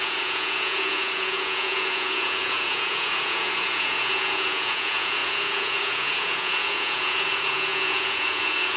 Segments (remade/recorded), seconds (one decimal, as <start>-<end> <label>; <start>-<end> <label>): 0.0-8.8 remade